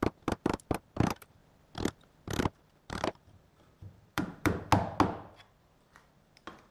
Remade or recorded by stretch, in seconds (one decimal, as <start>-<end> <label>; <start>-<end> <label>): 0.0-1.4 remade; 1.4-2.4 recorded; 2.4-4.7 remade; 4.7-5.5 recorded; 5.5-6.7 remade